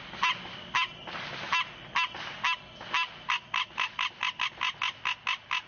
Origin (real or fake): real